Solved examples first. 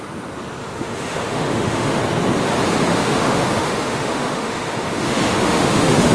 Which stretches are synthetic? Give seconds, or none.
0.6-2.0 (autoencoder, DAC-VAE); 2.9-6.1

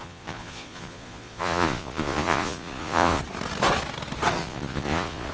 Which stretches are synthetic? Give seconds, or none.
0.0-3.2 (vocoder, Vocos); 4.4-5.3